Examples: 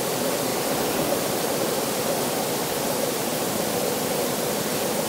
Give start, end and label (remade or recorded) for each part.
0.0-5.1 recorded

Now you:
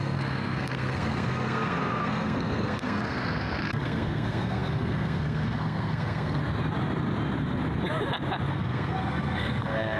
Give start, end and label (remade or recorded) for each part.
0.0-6.4 remade; 6.4-8.5 recorded; 8.5-10.0 remade

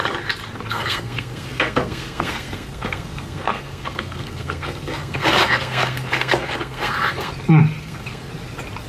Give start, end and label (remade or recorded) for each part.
0.0-0.7 recorded; 0.7-7.3 remade; 7.3-7.8 recorded; 7.8-8.3 remade; 8.3-8.9 recorded

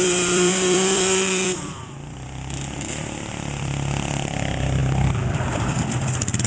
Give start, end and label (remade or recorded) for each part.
0.0-4.8 remade; 4.8-5.5 recorded; 5.5-6.5 remade

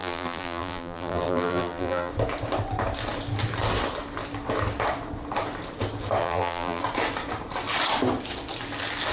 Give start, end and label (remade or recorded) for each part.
0.0-2.1 remade; 2.1-6.2 recorded; 6.2-6.8 remade; 6.8-9.1 recorded